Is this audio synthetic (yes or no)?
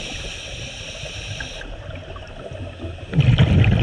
no